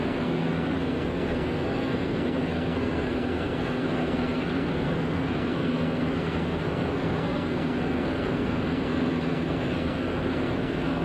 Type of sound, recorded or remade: remade